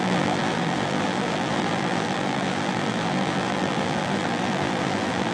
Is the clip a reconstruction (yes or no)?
yes